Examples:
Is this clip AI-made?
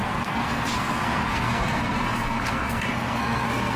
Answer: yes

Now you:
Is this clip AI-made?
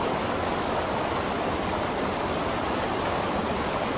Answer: no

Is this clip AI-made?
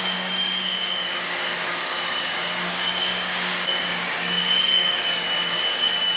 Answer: yes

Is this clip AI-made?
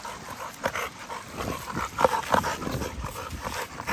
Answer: no